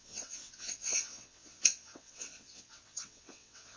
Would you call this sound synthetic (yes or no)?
yes